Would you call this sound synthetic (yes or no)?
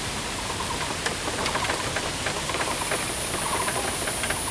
no